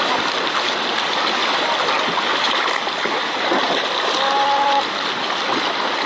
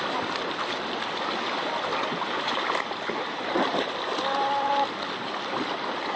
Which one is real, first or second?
first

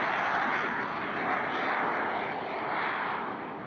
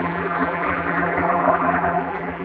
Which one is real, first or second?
first